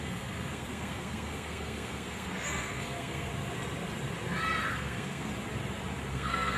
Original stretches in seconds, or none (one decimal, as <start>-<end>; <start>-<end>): 3.3-4.7; 5.3-6.1